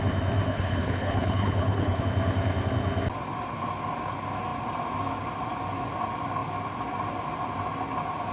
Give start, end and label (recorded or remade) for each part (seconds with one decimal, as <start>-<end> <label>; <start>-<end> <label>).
0.0-0.5 recorded; 0.5-2.0 remade; 2.0-8.3 recorded